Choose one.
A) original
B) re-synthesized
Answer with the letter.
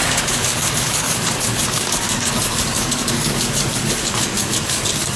B